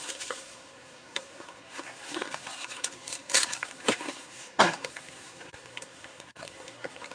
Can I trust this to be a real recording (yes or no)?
no